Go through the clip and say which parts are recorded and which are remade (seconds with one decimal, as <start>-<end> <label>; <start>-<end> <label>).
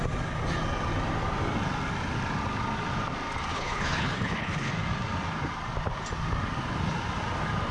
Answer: 0.0-3.5 recorded; 3.5-4.7 remade; 4.7-7.7 recorded